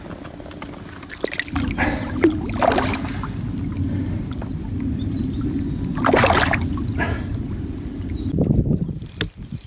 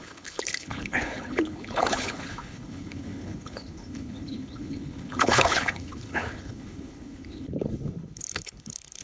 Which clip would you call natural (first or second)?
first